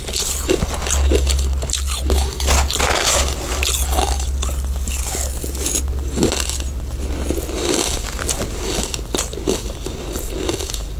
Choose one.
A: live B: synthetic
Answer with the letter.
A